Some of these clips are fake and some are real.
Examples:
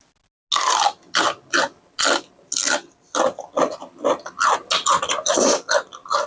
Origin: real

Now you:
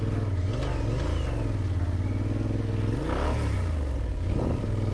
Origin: real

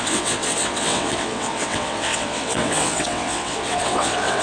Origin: fake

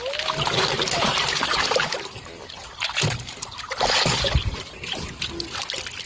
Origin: real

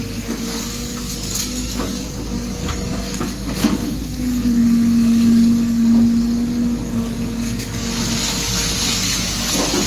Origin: fake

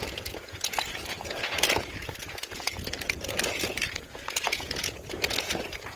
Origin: fake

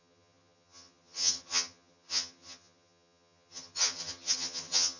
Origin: fake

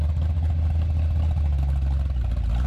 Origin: real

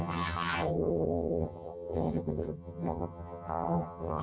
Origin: fake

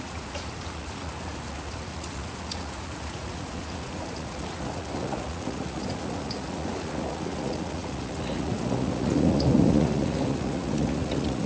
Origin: fake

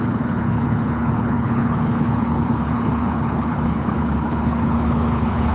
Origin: fake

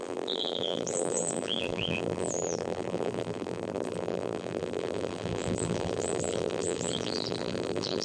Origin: fake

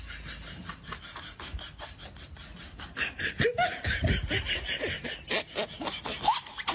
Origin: real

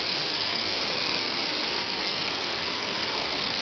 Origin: fake